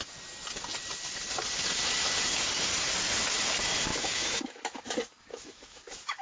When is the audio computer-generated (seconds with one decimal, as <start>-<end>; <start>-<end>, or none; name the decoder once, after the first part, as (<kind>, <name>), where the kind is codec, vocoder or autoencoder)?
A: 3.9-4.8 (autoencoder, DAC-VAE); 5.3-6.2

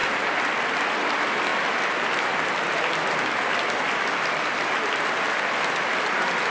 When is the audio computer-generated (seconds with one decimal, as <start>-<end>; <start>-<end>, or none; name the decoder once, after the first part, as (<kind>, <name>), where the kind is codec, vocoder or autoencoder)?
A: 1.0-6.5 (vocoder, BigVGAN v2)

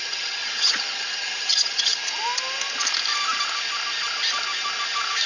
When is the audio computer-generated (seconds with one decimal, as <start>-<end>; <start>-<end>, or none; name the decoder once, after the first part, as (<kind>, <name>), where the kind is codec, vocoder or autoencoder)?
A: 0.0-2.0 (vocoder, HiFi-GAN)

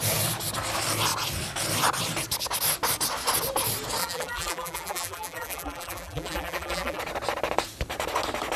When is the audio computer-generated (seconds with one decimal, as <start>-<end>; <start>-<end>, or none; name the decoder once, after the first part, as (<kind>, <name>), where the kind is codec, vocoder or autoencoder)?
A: 4.0-7.0 (vocoder, BigVGAN v2)